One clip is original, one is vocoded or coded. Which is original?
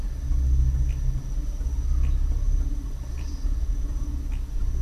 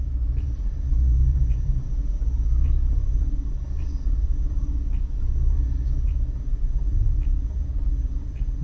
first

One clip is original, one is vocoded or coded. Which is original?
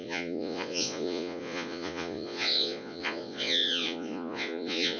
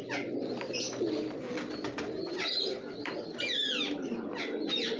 second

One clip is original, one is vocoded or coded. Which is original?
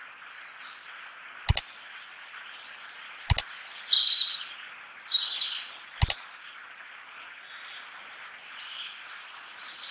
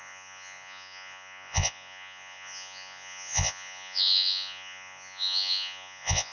first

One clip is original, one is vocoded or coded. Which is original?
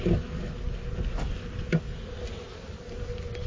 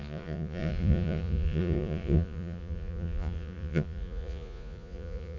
first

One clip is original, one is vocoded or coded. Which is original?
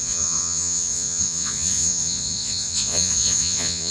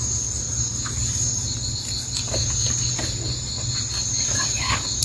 second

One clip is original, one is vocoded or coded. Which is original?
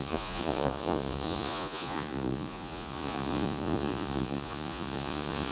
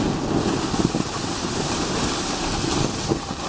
second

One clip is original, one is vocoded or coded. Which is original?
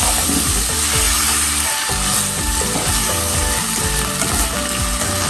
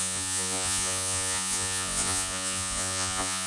first